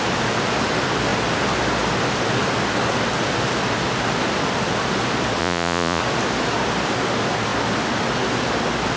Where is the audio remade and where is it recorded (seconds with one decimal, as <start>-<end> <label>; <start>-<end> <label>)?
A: 0.0-5.4 recorded; 5.4-6.0 remade; 6.0-9.0 recorded